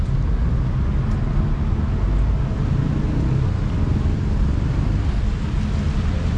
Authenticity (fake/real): real